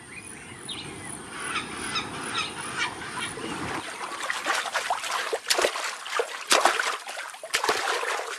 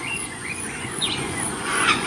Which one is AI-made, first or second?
second